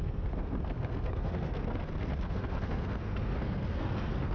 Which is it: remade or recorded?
remade